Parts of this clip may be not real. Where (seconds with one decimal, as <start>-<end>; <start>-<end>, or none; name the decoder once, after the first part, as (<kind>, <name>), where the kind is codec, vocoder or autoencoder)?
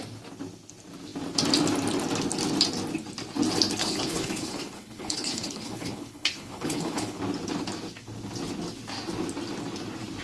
3.8-7.2 (codec, HILCodec)